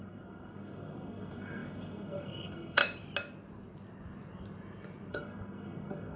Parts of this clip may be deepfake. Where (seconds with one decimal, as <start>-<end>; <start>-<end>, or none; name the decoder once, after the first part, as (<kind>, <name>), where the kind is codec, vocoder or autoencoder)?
0.0-2.8 (codec, SNAC); 5.1-6.2